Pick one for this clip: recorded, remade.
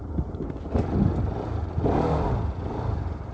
recorded